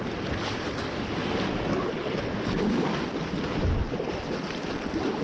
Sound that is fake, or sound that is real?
real